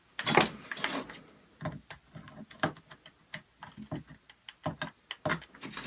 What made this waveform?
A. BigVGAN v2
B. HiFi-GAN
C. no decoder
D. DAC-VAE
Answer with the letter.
C